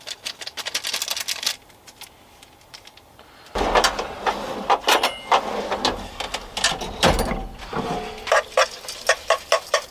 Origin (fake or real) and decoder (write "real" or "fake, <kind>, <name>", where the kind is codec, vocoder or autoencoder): real